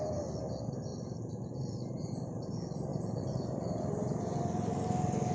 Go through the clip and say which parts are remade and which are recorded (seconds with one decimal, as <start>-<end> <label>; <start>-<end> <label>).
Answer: 0.0-0.9 recorded; 0.9-2.5 remade; 2.5-2.9 recorded; 2.9-4.2 remade; 4.2-5.3 recorded